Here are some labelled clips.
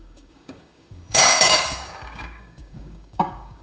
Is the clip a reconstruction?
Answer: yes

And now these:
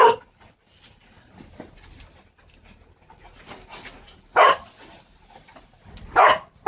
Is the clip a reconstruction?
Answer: no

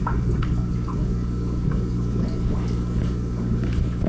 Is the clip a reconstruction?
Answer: yes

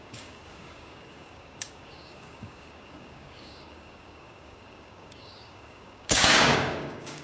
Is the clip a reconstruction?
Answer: yes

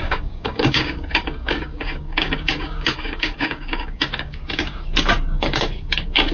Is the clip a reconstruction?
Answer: yes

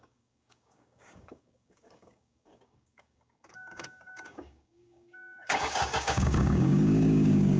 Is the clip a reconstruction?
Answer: yes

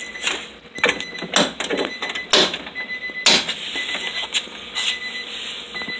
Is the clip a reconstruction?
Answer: no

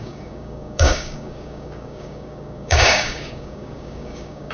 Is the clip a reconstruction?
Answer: yes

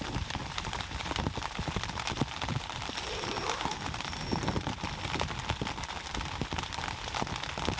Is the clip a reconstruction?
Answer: no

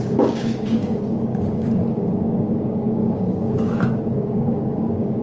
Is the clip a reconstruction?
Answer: yes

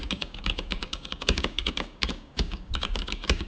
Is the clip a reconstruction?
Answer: yes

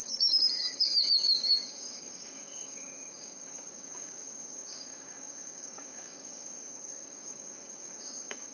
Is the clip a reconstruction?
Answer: yes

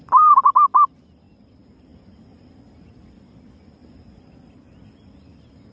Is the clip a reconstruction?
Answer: no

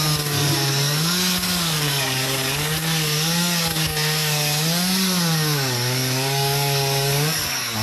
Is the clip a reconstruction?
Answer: yes